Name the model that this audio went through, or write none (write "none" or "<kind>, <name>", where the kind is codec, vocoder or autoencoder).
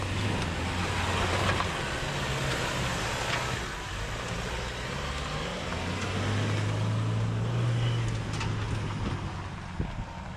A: none